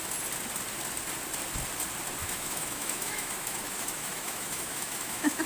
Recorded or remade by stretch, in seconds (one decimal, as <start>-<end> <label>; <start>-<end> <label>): 0.0-2.2 recorded; 2.2-5.5 remade